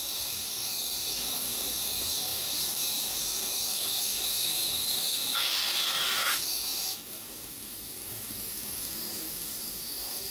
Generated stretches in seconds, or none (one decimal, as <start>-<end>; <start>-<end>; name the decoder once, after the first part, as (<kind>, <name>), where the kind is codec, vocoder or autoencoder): 0.0-10.3 (codec, DAC)

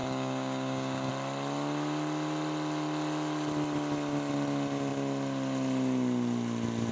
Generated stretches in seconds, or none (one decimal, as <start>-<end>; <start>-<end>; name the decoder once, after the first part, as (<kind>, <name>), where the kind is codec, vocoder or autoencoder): 0.0-1.1 (codec, DAC)

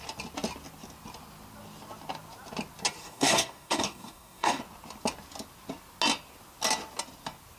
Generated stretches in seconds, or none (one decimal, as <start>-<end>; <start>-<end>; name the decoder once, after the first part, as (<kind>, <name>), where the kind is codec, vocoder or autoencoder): 3.0-4.6 (codec, DAC)